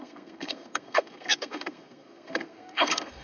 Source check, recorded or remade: remade